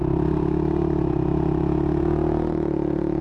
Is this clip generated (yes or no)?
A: yes